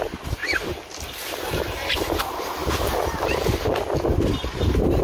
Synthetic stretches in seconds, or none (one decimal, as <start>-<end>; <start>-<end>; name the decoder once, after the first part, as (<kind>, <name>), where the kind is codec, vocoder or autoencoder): 0.4-2.2 (vocoder, BigVGAN v2)